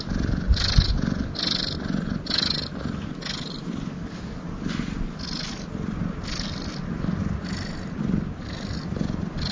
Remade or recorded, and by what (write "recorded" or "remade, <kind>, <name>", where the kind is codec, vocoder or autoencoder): recorded